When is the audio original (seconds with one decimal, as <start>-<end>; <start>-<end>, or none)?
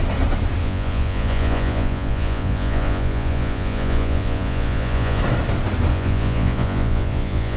0.0-0.6; 5.2-5.9